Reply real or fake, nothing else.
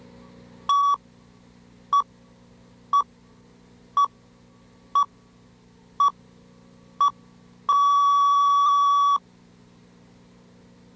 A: real